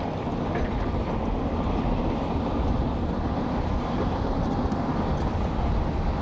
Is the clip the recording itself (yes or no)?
yes